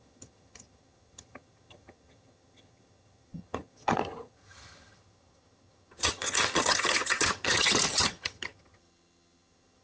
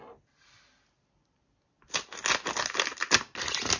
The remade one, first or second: first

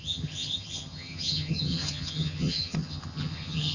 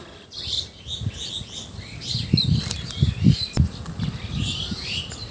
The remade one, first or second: first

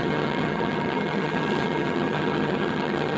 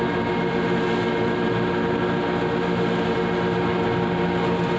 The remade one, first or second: first